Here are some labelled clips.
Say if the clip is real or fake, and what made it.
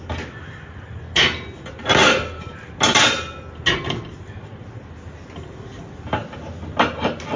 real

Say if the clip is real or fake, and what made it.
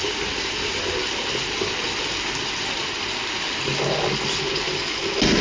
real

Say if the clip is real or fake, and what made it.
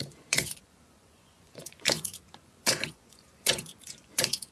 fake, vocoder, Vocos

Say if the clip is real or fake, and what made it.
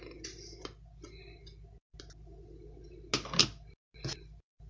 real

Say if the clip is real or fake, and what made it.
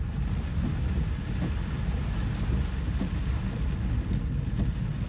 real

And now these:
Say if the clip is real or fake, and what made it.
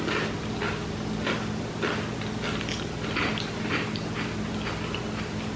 real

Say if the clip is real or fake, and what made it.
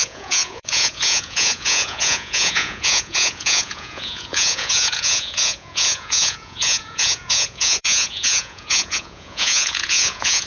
fake, vocoder, Vocos